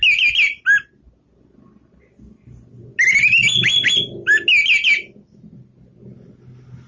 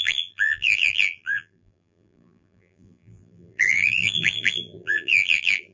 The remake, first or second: second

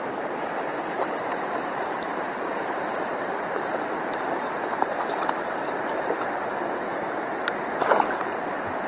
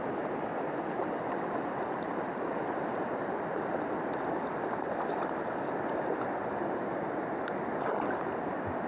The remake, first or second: first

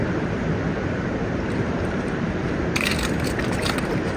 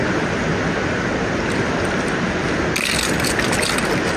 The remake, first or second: first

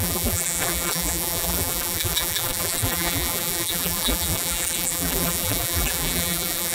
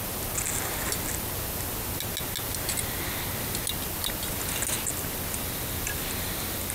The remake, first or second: first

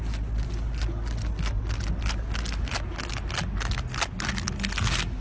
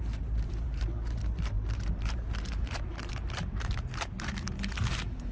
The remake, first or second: second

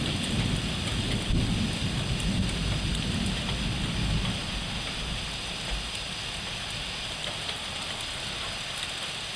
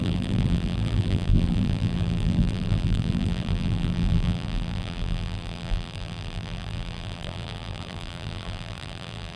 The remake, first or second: second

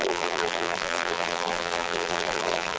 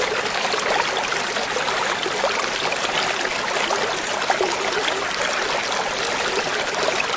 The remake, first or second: first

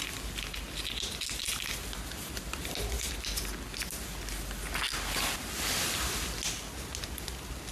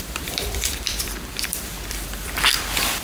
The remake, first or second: second